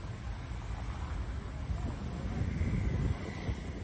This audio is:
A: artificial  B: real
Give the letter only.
B